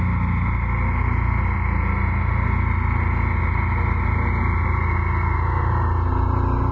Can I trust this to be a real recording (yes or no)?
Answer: yes